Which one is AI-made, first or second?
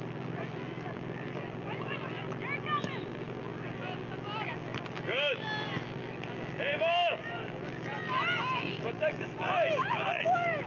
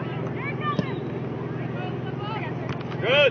first